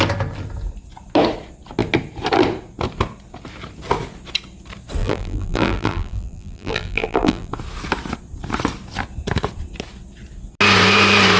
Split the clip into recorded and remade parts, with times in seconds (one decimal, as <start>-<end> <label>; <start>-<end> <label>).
0.0-5.0 recorded; 5.0-7.5 remade; 7.5-11.4 recorded